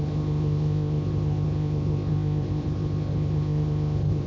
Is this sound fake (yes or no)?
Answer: yes